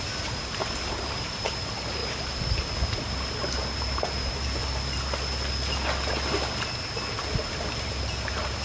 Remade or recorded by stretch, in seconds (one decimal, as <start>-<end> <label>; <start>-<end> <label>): 0.0-2.0 remade; 2.0-3.7 recorded; 3.7-4.6 remade; 4.6-7.3 recorded; 7.3-8.6 remade